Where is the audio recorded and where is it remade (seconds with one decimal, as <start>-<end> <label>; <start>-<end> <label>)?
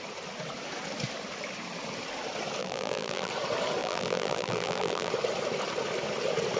0.0-2.6 recorded; 2.6-3.3 remade; 3.3-3.8 recorded; 3.8-5.1 remade; 5.1-6.6 recorded